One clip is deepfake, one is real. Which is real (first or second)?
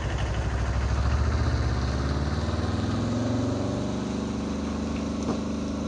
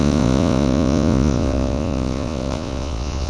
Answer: first